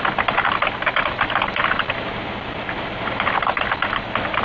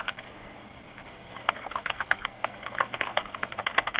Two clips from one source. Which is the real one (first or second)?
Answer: first